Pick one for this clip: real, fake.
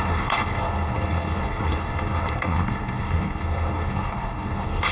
fake